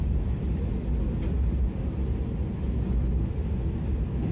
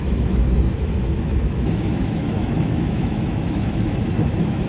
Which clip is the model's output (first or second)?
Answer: second